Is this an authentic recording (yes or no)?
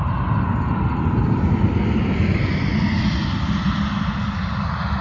yes